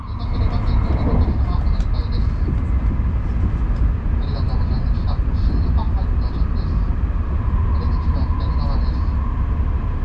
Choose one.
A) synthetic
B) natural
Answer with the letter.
B